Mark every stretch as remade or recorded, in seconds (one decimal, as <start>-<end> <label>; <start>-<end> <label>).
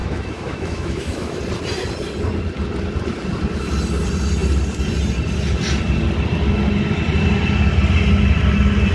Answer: 0.0-1.4 remade; 1.4-8.9 recorded